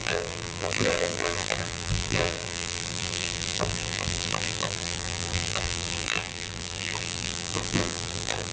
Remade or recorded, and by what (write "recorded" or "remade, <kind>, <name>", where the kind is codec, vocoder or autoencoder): remade, vocoder, BigVGAN v2